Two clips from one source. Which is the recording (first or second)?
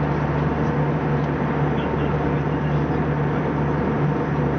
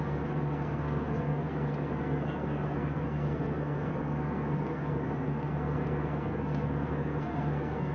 first